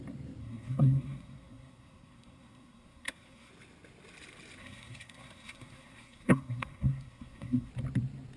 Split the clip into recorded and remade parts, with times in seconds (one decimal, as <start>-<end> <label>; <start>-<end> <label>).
0.0-0.4 recorded; 0.4-3.5 remade; 3.5-4.6 recorded; 4.6-7.7 remade; 7.7-8.4 recorded